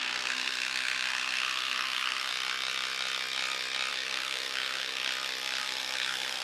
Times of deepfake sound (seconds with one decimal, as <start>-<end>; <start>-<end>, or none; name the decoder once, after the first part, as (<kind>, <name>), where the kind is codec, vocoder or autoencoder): 0.0-2.3 (codec, SNAC); 3.9-5.0; 5.6-6.4